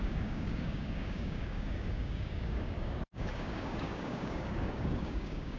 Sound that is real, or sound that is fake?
fake